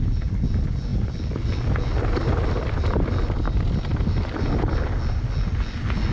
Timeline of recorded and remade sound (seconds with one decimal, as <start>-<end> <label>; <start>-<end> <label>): 0.0-6.1 recorded